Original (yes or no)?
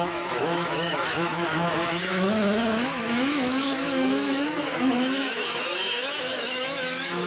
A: no